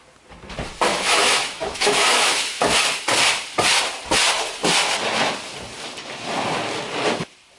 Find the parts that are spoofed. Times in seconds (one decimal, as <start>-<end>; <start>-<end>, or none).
0.9-2.8